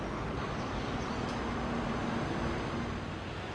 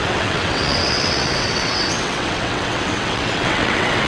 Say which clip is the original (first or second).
first